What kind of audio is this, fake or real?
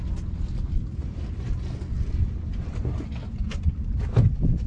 real